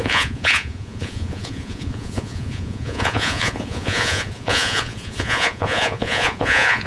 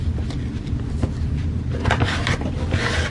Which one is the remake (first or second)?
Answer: first